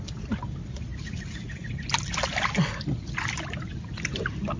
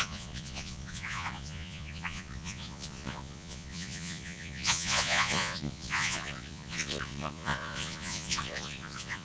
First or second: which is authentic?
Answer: first